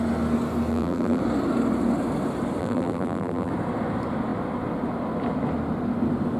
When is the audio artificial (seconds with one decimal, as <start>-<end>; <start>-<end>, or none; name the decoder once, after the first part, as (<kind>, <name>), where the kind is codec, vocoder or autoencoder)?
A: 0.7-1.2 (vocoder, BigVGAN v2); 2.6-3.5